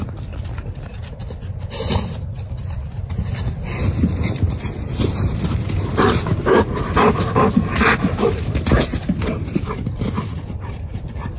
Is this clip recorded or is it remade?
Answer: recorded